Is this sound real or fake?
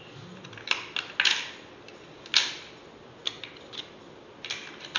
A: real